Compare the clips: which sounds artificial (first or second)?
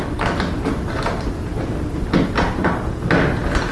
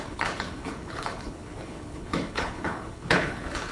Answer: second